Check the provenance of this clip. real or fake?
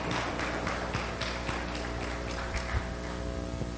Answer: real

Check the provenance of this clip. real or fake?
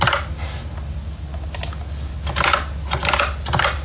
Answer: real